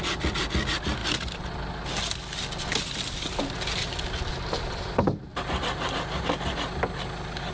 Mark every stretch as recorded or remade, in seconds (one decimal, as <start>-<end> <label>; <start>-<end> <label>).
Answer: 0.0-7.5 recorded